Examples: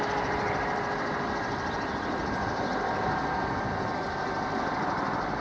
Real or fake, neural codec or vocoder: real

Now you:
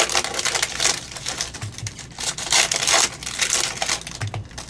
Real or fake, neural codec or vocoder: real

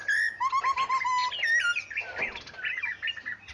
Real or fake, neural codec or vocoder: real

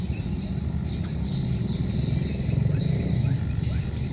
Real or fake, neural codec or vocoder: real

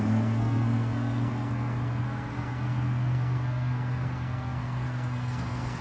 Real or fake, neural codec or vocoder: fake, codec, SNAC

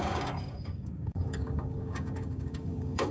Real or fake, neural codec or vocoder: fake, codec, DAC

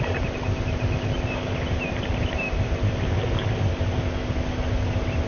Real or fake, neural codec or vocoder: real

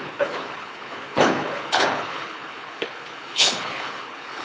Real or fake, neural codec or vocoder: fake, codec, HILCodec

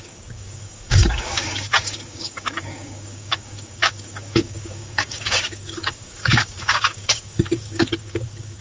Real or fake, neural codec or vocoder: fake, codec, DAC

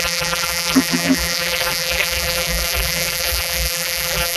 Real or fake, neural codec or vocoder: fake, vocoder, BigVGAN v2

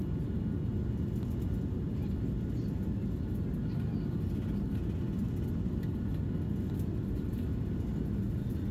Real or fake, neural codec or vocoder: real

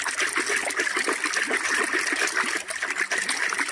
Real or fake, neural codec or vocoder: real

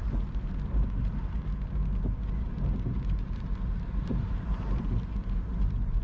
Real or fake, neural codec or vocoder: fake, vocoder, BigVGAN v2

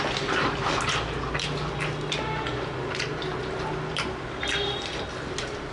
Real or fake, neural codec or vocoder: real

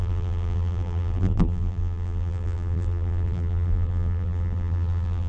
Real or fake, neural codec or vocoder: fake, vocoder, BigVGAN v2